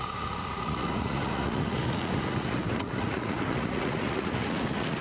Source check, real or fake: fake